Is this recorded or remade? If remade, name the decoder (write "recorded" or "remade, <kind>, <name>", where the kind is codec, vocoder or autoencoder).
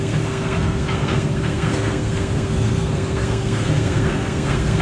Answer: remade, codec, SNAC